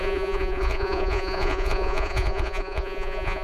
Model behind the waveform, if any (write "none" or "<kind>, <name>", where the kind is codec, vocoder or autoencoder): vocoder, Vocos